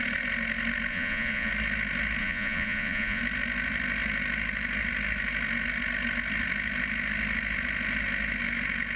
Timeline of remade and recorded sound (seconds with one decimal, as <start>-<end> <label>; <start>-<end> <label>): 0.0-0.9 recorded; 0.9-1.5 remade; 1.5-2.2 recorded; 2.2-3.2 remade; 3.2-9.0 recorded